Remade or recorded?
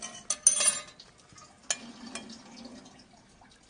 recorded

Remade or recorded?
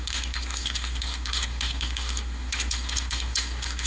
remade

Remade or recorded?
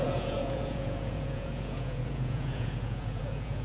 remade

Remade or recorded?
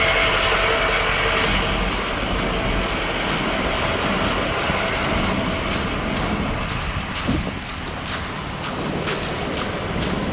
recorded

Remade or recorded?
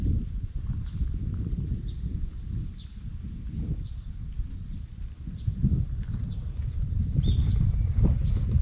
remade